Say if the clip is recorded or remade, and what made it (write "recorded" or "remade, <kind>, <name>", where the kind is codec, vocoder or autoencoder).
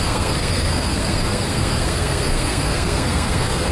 remade, codec, SNAC